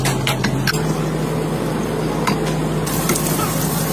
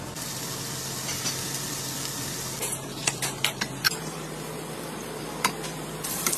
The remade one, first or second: second